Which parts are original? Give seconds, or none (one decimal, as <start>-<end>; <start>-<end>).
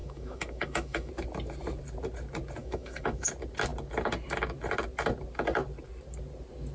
1.1-2.6; 3.3-6.7